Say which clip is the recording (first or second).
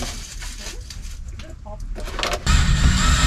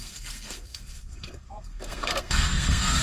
first